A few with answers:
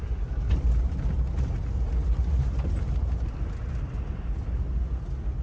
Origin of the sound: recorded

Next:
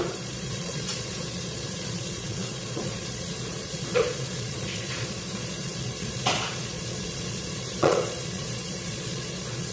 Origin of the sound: remade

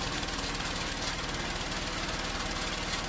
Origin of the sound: recorded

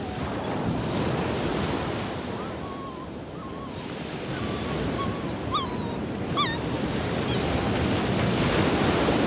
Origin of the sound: recorded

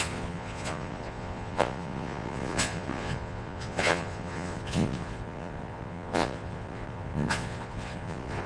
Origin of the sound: remade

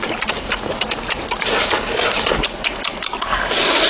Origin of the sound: recorded